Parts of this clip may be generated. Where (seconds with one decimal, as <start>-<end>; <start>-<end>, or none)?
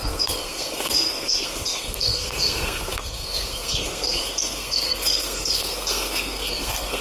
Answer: 0.0-7.0